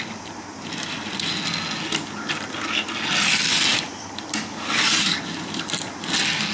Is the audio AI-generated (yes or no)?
no